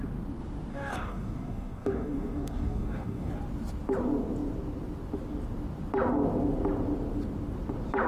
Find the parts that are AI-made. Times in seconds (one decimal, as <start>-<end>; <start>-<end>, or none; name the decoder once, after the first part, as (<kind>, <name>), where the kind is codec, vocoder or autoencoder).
0.7-3.3 (codec, DAC)